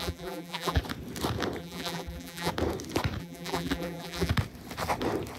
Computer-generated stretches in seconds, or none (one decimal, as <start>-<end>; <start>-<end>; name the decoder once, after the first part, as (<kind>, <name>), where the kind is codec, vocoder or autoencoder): 0.0-0.8 (vocoder, BigVGAN v2); 1.6-2.5; 3.2-4.3